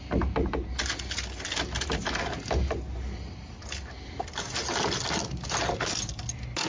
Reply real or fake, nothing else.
real